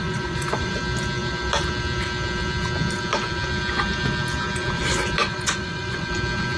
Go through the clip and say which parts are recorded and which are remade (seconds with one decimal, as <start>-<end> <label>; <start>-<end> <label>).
0.0-0.7 remade; 0.7-5.2 recorded; 5.2-6.1 remade; 6.1-6.6 recorded